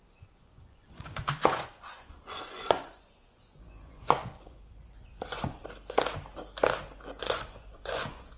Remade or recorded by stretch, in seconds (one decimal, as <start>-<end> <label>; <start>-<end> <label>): 0.0-5.6 remade; 5.6-7.2 recorded; 7.2-8.4 remade